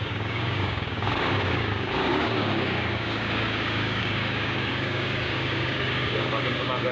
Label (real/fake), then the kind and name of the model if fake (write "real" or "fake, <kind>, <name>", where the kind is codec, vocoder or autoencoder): fake, codec, DAC